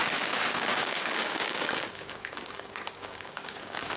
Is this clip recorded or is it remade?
remade